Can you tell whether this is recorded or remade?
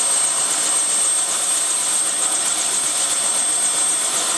recorded